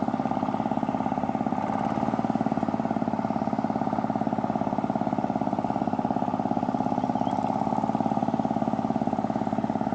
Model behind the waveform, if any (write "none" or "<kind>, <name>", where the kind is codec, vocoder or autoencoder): none